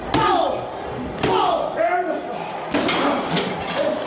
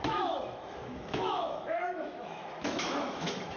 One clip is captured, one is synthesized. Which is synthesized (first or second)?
second